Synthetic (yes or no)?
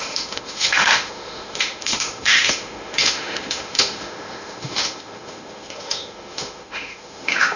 yes